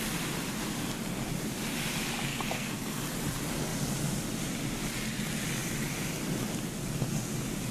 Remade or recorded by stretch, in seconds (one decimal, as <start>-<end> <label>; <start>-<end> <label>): 0.0-2.3 recorded; 2.3-3.0 remade; 3.0-7.7 recorded